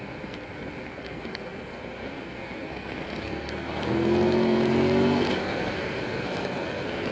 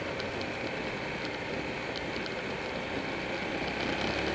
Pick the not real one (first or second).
first